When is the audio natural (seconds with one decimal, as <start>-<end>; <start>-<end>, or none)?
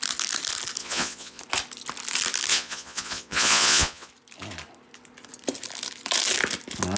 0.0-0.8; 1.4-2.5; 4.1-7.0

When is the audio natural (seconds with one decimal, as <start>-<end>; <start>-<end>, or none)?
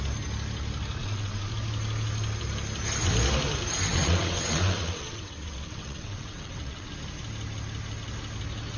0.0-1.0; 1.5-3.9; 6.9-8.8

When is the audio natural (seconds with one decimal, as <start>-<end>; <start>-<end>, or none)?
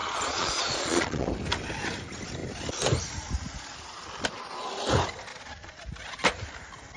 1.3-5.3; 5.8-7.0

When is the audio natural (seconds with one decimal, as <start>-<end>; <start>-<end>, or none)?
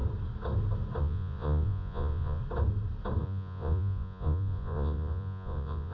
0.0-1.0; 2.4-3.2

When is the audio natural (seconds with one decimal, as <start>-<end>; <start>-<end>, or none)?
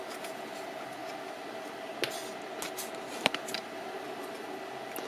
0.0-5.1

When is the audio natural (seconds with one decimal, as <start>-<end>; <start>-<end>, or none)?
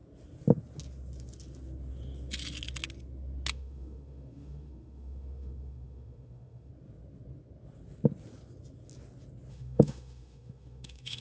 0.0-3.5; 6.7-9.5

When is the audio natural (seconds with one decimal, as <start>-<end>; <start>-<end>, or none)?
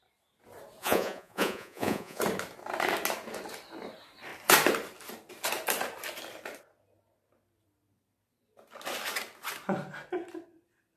0.0-0.8; 2.2-11.0